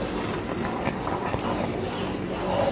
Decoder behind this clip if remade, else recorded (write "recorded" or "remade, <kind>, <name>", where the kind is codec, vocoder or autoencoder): recorded